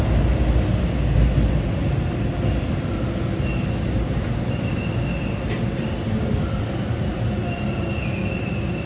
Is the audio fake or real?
real